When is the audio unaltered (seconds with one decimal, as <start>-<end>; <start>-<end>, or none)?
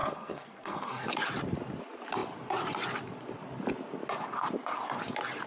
1.1-5.5